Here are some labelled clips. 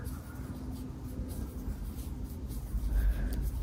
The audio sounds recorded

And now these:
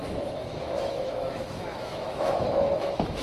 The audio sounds remade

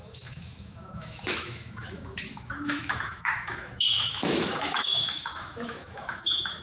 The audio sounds remade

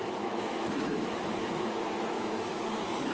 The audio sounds remade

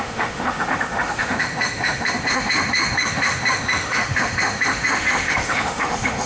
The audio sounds remade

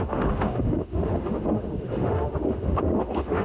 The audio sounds remade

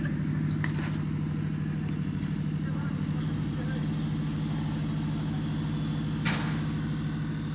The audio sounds recorded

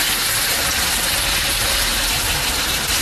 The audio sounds recorded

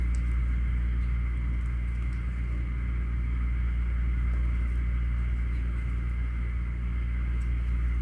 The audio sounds recorded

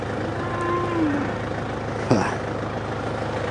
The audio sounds recorded